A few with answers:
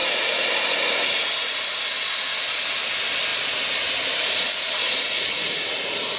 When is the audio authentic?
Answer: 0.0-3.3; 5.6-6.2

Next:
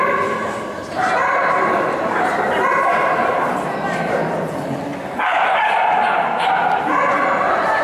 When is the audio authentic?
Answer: 0.0-1.2; 4.2-4.9

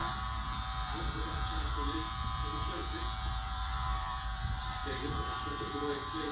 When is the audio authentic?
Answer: none